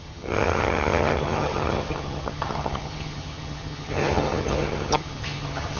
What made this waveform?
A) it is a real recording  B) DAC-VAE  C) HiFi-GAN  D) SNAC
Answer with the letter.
C